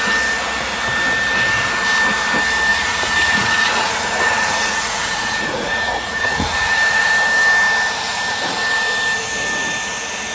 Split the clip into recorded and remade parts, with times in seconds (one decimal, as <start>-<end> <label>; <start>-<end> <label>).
0.0-2.7 recorded; 2.7-7.1 remade; 7.1-10.3 recorded